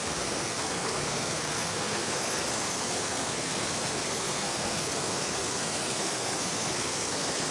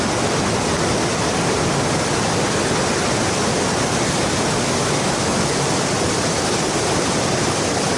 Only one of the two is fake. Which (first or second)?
first